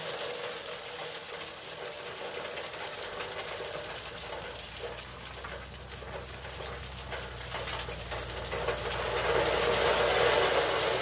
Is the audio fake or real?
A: real